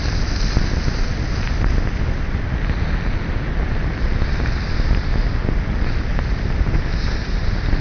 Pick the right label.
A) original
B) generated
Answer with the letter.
A